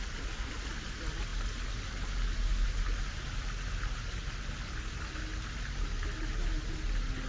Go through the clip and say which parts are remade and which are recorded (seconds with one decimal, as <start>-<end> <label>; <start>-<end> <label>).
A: 0.0-7.3 recorded